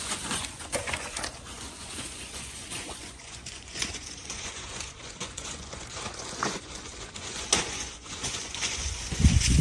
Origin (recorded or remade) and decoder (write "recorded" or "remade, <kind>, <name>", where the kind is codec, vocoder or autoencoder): remade, vocoder, Vocos